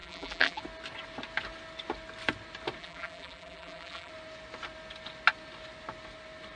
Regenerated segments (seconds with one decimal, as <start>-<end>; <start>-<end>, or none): 0.0-0.6; 2.8-4.1

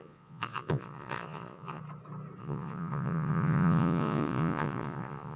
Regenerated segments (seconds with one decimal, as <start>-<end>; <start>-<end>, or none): 0.0-1.8; 2.4-5.4